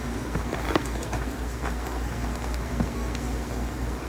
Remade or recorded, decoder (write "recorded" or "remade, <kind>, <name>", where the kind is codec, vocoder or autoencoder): remade, codec, SNAC